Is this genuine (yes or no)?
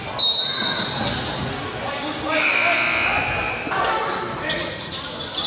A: yes